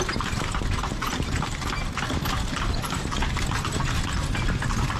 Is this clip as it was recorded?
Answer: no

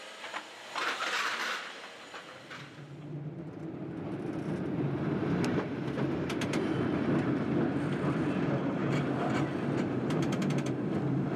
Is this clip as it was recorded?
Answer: no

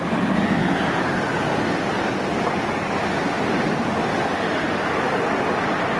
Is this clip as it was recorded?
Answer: yes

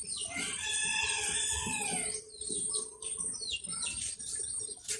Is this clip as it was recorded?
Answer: yes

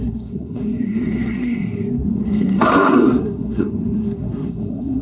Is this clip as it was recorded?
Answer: no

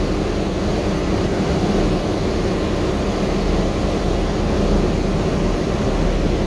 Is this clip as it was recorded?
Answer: yes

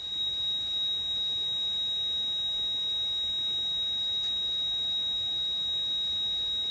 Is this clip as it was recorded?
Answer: yes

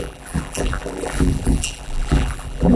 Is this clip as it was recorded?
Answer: no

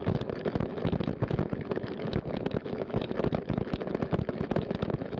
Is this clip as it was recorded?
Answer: no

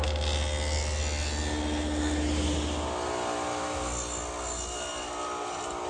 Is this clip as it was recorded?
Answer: yes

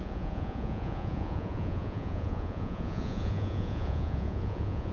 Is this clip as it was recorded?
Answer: no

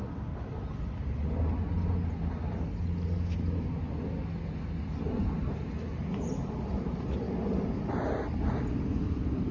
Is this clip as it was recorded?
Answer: yes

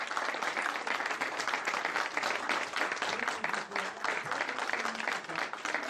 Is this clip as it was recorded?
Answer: yes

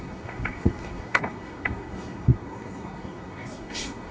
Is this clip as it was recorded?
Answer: no